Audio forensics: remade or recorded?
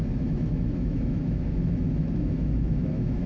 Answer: remade